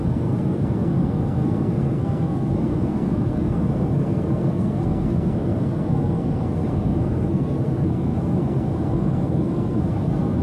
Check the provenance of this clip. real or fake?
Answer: fake